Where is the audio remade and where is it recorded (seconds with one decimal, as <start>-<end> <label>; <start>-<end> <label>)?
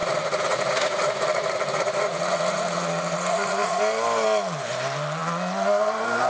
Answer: 0.0-3.8 remade; 3.8-6.3 recorded